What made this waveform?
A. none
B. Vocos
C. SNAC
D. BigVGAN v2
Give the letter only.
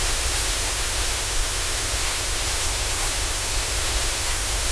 C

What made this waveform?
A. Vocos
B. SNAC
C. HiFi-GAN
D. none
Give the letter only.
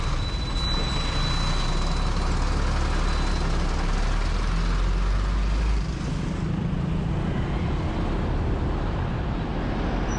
D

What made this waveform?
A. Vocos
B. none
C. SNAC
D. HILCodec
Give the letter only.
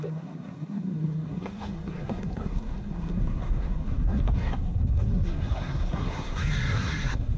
C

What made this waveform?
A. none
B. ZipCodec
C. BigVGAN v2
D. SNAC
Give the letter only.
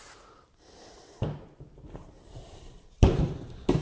C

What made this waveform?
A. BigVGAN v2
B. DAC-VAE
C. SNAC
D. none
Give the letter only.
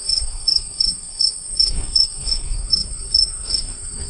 C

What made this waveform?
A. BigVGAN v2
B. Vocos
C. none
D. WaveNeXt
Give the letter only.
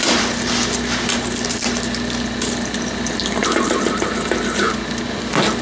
C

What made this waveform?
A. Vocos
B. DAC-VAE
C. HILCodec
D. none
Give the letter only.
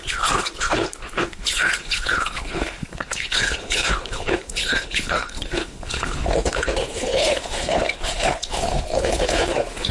C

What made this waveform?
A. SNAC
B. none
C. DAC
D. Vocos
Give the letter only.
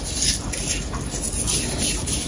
B